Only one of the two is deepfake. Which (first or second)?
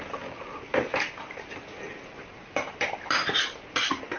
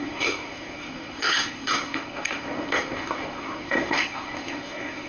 second